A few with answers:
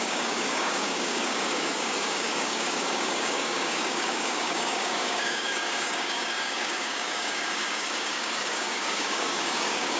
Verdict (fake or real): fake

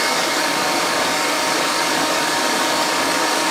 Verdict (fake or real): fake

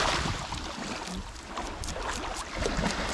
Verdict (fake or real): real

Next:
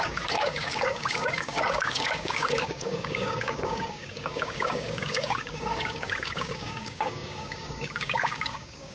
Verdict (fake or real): fake